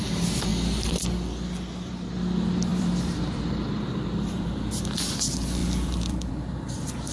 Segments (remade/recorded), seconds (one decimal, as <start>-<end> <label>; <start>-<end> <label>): 0.0-2.7 recorded; 2.7-4.7 remade; 4.7-5.6 recorded; 5.6-6.3 remade; 6.3-7.1 recorded